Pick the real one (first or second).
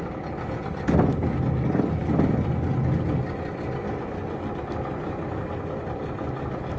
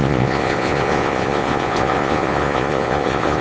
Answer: first